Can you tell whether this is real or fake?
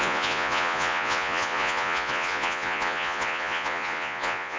fake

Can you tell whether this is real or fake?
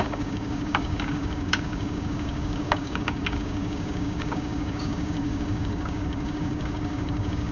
fake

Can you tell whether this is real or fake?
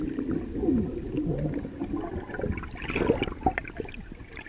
real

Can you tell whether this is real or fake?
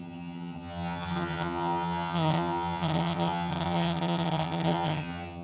fake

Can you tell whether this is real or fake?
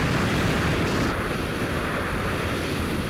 fake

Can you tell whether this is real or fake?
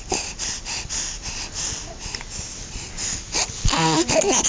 real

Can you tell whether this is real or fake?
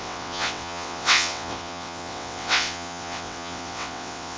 fake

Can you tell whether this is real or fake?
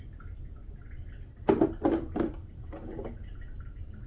real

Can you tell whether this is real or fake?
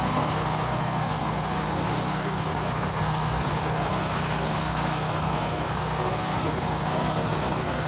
fake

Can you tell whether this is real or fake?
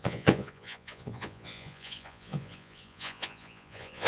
fake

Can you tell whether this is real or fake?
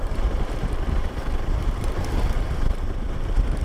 fake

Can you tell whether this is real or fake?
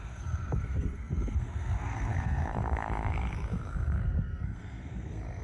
fake